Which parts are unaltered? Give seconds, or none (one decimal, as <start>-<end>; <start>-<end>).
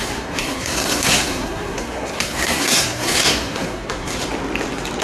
4.1-5.0